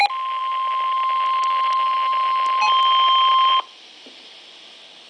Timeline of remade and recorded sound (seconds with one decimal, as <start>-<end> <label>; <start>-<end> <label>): 0.0-5.1 recorded